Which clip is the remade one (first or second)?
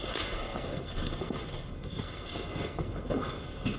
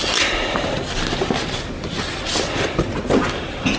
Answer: first